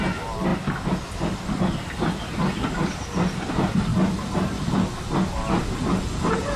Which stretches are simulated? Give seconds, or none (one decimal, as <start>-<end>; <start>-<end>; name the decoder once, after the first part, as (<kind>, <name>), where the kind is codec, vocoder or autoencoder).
none

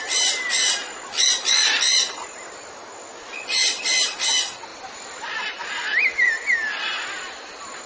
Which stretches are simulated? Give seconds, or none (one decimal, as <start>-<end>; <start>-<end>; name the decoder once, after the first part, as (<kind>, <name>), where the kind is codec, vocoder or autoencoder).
4.7-5.7 (vocoder, BigVGAN v2)

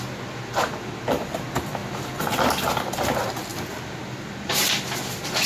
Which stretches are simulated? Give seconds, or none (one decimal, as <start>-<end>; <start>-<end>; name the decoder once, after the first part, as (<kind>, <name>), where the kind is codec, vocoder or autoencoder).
3.5-4.0 (vocoder, BigVGAN v2)

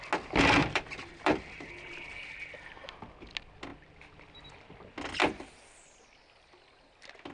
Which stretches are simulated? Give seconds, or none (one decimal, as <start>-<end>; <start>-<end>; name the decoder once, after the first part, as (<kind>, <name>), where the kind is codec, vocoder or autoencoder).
0.6-1.6 (vocoder, BigVGAN v2)

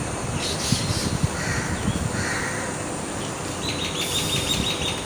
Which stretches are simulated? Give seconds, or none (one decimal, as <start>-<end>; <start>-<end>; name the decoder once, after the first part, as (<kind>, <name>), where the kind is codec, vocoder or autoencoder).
1.5-4.6 (vocoder, BigVGAN v2)

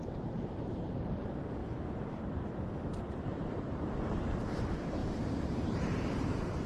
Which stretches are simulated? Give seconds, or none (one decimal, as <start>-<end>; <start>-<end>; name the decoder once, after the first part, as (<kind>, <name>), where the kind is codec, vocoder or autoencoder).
0.0-1.6 (vocoder, BigVGAN v2); 3.1-5.0; 5.5-6.7

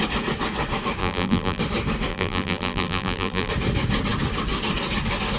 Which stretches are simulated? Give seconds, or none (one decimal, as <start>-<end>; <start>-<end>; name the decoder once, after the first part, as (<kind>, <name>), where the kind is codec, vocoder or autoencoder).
1.0-1.6 (vocoder, BigVGAN v2); 2.1-3.5